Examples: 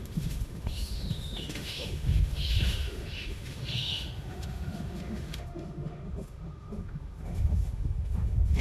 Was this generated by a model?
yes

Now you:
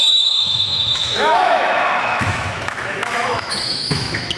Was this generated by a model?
yes